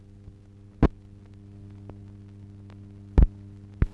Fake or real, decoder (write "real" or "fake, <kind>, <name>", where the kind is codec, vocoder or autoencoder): real